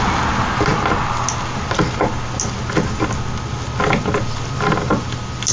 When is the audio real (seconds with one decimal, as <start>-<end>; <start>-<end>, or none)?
0.0-5.5

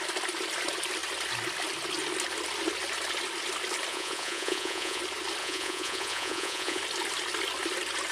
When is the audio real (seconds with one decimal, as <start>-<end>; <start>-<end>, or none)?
0.0-3.9; 5.0-5.4; 6.8-8.1